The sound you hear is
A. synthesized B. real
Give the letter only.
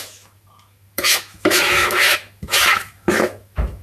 A